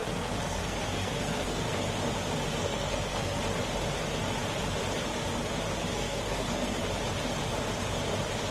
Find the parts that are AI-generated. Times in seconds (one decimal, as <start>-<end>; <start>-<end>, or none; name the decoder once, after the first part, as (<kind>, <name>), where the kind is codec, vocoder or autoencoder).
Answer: 0.0-1.9 (codec, SNAC); 2.6-3.4; 5.9-6.8